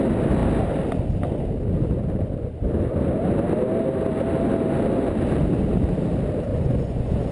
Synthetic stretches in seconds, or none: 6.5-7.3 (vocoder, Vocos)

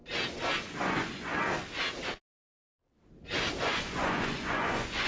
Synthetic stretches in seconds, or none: 0.8-1.3 (vocoder, Vocos); 3.6-5.1